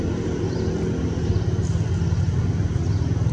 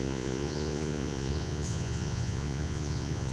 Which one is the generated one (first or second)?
second